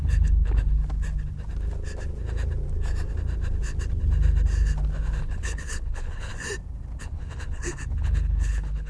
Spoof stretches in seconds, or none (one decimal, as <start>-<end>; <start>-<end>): 0.0-0.8; 5.2-6.3; 7.0-8.9